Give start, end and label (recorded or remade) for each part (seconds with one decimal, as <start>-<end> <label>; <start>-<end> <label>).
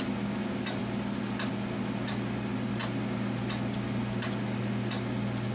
0.0-5.5 recorded